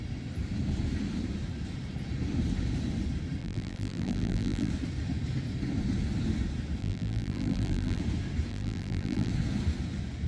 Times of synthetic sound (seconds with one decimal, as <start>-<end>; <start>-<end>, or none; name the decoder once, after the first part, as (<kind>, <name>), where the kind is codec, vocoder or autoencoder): 3.4-4.7 (vocoder, BigVGAN v2); 6.8-8.0; 8.5-9.3